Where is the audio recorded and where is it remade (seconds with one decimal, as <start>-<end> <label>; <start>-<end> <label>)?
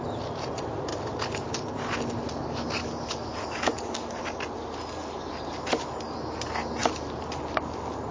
0.0-2.8 recorded; 2.8-4.2 remade; 4.2-8.1 recorded